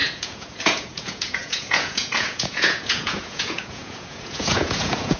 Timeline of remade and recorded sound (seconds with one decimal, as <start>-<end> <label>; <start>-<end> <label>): 0.0-5.2 remade